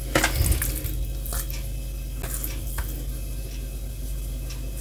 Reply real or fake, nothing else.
real